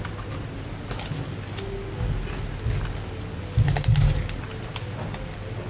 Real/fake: real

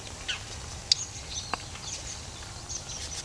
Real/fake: real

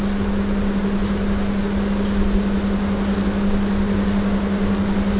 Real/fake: real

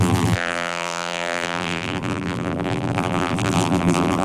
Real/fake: fake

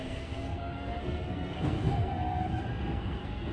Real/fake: fake